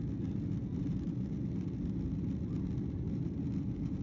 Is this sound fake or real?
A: real